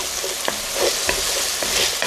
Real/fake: real